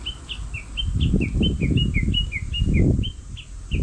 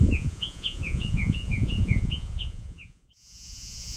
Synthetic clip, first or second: second